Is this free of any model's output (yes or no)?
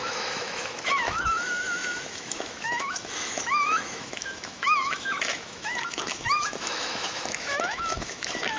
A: no